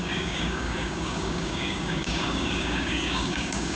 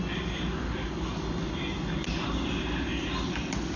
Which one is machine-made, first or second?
first